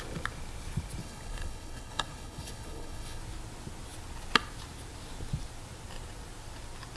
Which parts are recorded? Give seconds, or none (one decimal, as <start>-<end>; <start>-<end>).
0.0-1.0; 3.2-7.0